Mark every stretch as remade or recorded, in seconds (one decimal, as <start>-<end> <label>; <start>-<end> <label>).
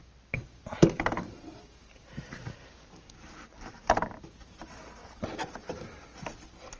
0.0-0.7 recorded; 0.7-4.6 remade; 4.6-5.0 recorded; 5.0-6.1 remade; 6.1-6.8 recorded